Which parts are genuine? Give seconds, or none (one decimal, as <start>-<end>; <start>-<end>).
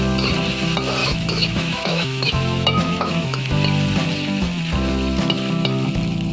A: 0.0-1.0; 3.5-6.3